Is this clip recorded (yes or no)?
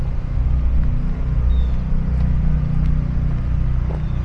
yes